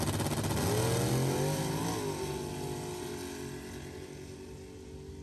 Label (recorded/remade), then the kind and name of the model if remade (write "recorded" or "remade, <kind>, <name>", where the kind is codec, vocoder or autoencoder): recorded